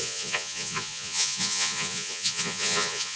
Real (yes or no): no